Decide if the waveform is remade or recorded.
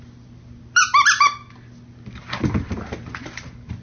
recorded